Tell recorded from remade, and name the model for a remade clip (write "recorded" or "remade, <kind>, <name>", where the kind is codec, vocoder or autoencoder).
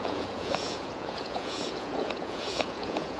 remade, vocoder, Vocos